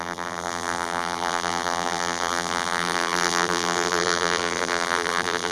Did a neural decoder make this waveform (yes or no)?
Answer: yes